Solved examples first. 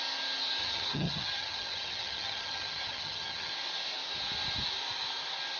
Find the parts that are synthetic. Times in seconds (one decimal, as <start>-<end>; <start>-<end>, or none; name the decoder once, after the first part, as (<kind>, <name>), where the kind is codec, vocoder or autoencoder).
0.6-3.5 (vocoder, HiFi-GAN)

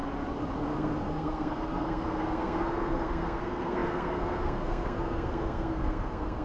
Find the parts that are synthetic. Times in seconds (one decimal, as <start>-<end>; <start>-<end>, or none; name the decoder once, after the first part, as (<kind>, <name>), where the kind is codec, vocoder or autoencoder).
0.6-6.4 (codec, SNAC)

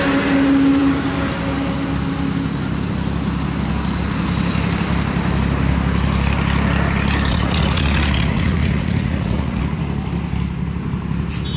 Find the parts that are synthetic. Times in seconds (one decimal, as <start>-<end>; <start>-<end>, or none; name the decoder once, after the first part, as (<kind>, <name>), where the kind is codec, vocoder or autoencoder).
7.3-9.6 (vocoder, Vocos)

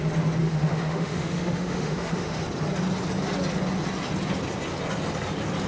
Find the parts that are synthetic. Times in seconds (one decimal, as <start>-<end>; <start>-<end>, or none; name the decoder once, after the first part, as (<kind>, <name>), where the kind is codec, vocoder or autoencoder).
0.4-2.4 (autoencoder, DAC-VAE)